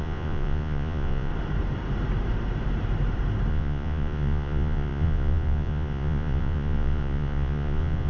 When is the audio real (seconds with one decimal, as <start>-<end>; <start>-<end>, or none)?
1.3-3.5